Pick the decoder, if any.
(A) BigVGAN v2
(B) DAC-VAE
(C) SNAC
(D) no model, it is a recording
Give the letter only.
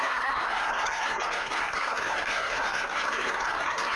C